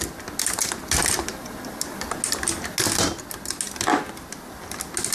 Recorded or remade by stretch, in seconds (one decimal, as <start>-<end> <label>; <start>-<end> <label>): 0.0-5.1 recorded